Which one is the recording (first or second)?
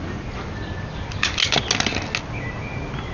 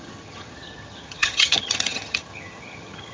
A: first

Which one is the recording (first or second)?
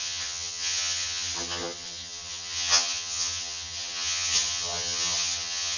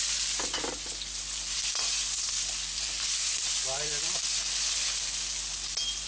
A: second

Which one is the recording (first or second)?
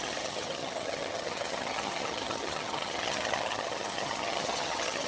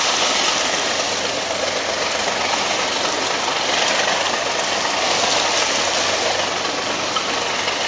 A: second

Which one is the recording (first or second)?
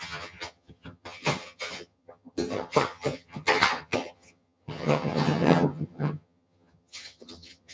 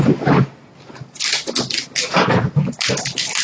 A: second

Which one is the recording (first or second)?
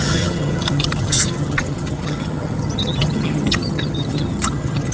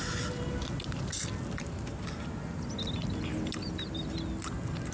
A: second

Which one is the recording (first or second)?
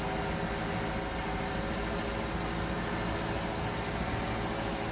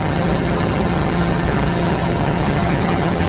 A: first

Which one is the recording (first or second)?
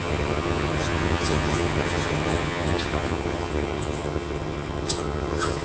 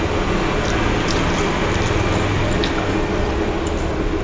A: second